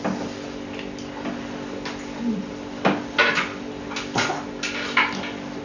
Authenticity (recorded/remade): recorded